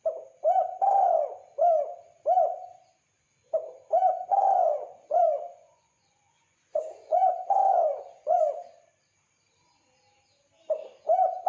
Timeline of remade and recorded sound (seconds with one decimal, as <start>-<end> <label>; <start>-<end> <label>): 0.0-4.3 recorded; 4.3-8.4 remade; 8.4-11.5 recorded

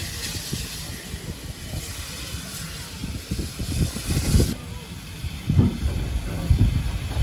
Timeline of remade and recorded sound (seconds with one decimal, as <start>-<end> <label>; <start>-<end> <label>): 0.0-7.2 recorded

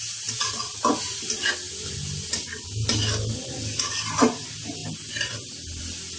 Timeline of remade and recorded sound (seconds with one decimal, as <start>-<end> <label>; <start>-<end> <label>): 0.0-6.2 recorded

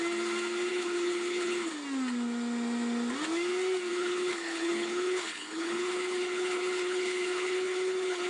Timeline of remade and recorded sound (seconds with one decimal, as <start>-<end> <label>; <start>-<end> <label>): 0.0-0.7 recorded; 0.7-1.7 remade; 1.7-3.9 recorded; 3.9-8.3 remade

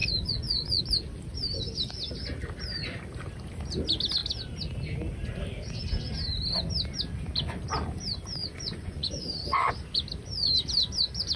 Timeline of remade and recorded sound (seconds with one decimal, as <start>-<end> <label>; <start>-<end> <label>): 0.0-0.8 remade; 0.8-8.4 recorded; 8.4-9.7 remade; 9.7-11.4 recorded